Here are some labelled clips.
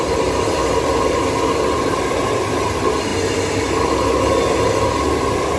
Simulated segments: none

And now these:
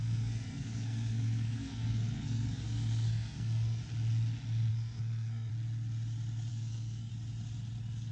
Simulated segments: 0.0-3.8; 4.7-5.5; 6.5-7.1